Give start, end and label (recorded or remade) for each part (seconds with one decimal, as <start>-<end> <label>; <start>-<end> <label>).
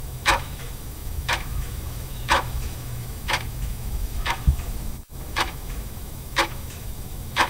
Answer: 0.0-7.5 remade